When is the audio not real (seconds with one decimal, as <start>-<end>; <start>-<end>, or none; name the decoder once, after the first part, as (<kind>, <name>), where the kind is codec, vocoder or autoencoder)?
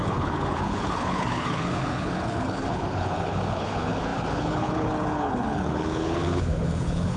0.0-7.2 (codec, HILCodec)